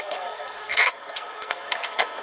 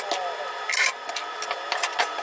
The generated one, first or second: first